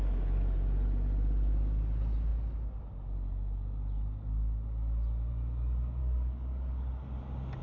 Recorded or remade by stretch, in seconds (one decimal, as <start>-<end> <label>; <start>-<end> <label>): 0.0-6.0 recorded; 6.0-6.9 remade; 6.9-7.6 recorded